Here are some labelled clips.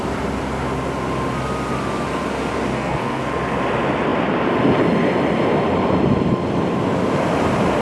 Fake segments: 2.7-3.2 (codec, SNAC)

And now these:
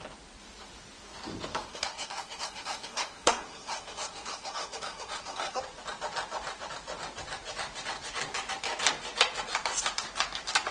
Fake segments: 1.7-5.6 (codec, SNAC)

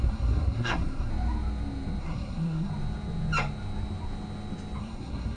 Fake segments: 0.0-1.1 (codec, SNAC); 2.0-2.7; 4.8-5.4

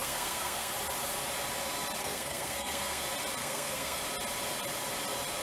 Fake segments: 0.0-0.7 (codec, SNAC); 2.0-3.0; 3.4-4.0

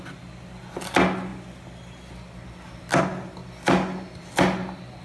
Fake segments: none

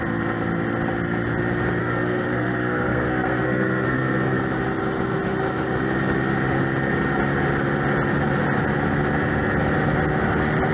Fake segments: 1.8-4.4 (codec, SNAC)

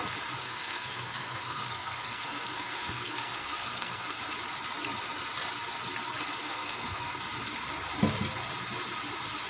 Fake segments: 0.4-4.2 (codec, SNAC); 6.4-7.2

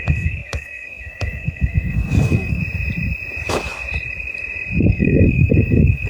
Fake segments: 0.0-2.6 (codec, SNAC); 4.8-6.1